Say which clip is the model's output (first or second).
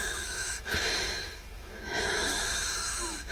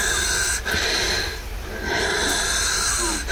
first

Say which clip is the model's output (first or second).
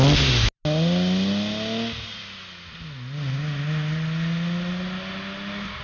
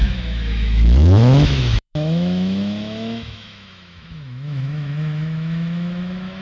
second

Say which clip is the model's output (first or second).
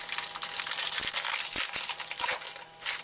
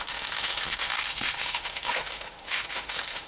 second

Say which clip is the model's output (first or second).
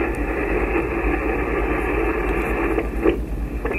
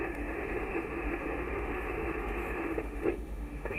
second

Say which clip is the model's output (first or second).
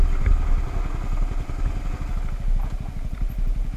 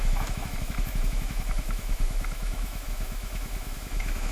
second